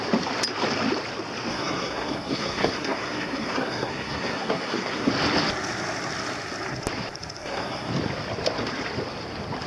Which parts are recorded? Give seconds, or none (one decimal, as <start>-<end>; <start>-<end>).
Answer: 0.0-1.5; 5.1-7.4; 7.9-9.7